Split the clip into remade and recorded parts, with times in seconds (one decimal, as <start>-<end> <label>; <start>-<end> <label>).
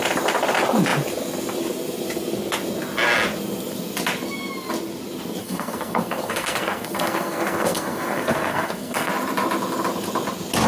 0.0-5.4 recorded; 5.4-9.1 remade; 9.1-10.7 recorded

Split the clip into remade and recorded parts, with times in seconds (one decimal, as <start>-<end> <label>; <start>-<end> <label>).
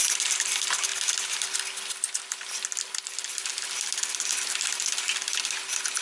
0.0-6.0 recorded